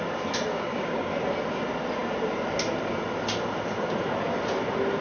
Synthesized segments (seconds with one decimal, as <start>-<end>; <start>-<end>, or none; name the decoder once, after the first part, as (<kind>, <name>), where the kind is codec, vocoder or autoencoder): 0.5-1.1 (codec, DAC)